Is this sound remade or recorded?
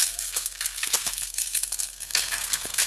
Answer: remade